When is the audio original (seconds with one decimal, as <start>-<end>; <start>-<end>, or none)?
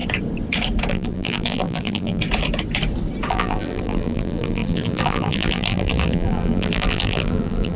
0.0-0.9; 2.2-3.3